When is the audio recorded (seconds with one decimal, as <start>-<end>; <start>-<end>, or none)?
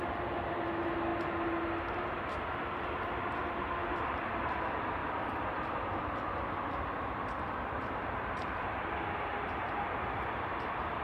0.0-3.4; 4.2-5.0; 6.0-8.0